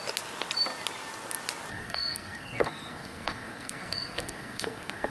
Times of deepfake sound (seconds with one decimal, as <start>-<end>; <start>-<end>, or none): 1.7-5.1